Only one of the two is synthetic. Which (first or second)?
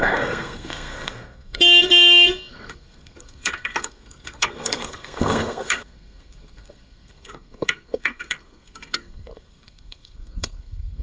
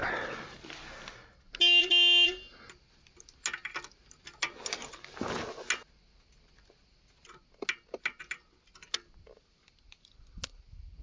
first